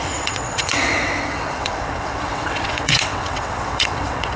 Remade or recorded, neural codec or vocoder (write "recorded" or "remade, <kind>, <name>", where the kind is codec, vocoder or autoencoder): remade, vocoder, WaveNeXt